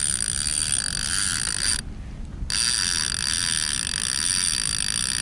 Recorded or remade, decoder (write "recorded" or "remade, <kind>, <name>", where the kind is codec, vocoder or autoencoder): recorded